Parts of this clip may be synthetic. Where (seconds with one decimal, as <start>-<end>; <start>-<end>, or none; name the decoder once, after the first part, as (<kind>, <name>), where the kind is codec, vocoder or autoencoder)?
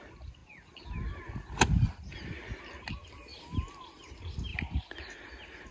none